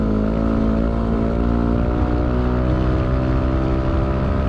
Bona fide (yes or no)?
yes